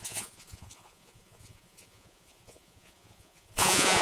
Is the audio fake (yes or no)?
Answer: yes